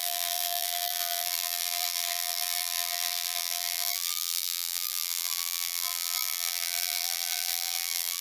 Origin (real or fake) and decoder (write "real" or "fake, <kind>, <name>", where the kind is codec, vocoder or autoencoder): fake, vocoder, BigVGAN v2